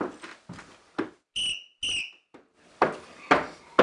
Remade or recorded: recorded